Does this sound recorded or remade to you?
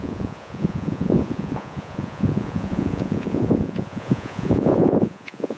remade